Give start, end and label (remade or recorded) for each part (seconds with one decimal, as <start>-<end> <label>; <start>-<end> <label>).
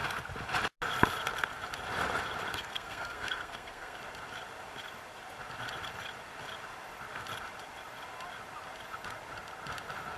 0.0-2.5 recorded; 2.5-4.0 remade; 4.0-10.2 recorded